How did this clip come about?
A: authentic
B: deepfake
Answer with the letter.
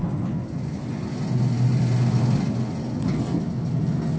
A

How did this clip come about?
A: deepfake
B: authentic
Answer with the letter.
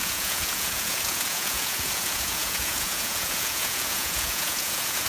A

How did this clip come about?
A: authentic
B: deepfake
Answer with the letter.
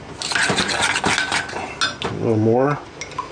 A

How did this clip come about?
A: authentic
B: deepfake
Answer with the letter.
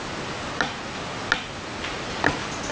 A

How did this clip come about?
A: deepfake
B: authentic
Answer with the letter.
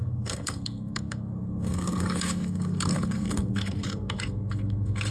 A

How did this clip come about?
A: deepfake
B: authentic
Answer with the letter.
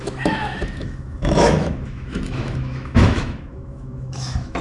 A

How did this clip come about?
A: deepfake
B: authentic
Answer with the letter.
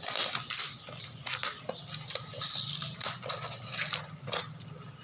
B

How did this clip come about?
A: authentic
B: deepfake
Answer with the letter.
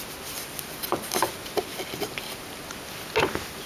A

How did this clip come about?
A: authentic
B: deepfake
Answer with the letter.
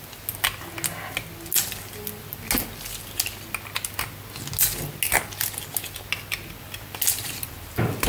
A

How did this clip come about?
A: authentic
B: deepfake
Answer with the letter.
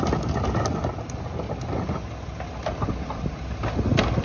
A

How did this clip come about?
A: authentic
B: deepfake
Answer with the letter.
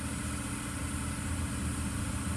A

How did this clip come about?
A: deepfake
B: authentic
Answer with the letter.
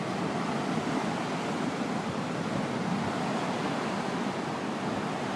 B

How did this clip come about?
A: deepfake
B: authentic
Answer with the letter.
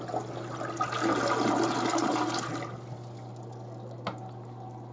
B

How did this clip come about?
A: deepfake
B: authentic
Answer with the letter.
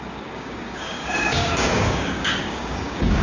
A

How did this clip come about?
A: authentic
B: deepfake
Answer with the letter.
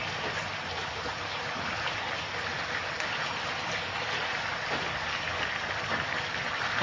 A